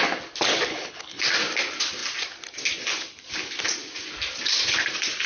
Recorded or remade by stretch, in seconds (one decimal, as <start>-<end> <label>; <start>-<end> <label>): 0.0-0.7 recorded; 0.7-1.2 remade; 1.2-5.3 recorded